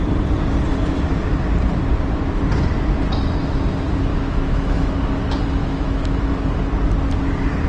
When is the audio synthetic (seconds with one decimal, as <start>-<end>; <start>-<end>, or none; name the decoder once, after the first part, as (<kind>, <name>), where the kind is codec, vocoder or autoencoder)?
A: 4.1-4.9 (autoencoder, DAC-VAE); 5.6-6.4